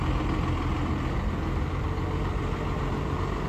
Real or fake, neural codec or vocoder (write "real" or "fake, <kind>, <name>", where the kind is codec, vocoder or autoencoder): real